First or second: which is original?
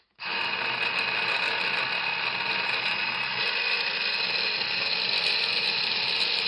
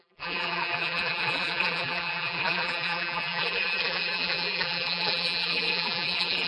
first